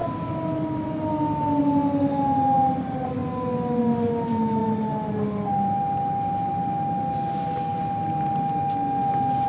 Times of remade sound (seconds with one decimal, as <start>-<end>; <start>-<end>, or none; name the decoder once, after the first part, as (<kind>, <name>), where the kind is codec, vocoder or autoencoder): none